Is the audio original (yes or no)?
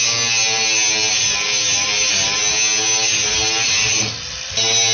yes